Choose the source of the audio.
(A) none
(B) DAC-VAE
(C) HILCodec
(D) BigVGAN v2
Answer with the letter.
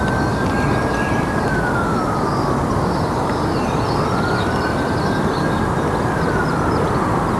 A